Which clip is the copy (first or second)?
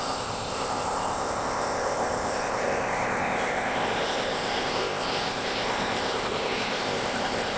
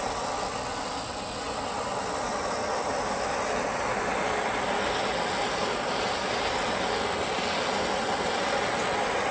first